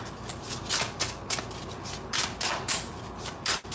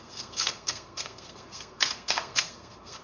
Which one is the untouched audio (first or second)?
first